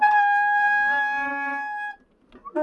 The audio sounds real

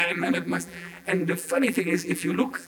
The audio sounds fake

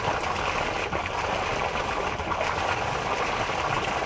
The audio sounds real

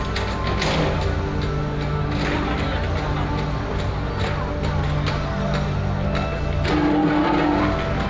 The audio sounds real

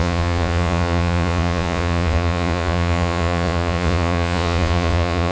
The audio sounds fake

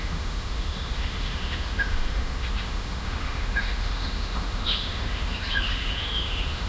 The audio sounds fake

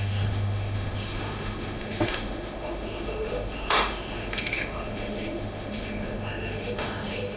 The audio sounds fake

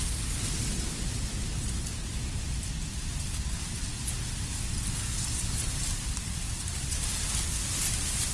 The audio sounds real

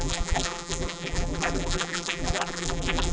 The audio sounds fake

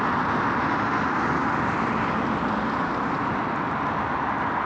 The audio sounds real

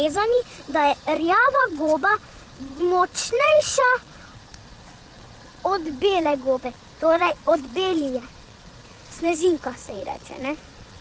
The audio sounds fake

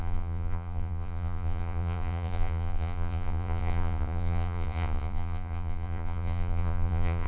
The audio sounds fake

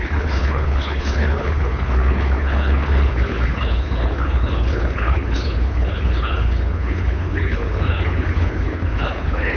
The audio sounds fake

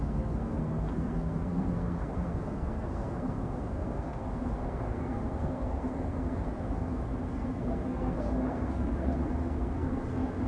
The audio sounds fake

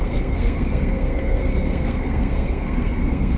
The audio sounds fake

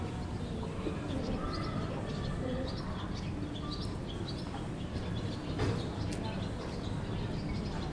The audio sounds real